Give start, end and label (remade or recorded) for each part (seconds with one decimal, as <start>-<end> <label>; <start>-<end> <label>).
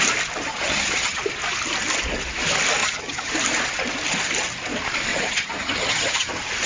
0.0-0.5 recorded; 0.5-1.2 remade; 1.2-2.8 recorded; 2.8-3.3 remade; 3.3-5.1 recorded; 5.1-6.3 remade; 6.3-6.7 recorded